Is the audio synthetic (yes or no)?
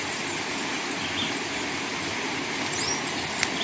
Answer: no